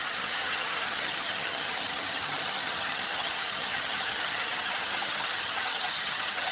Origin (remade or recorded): remade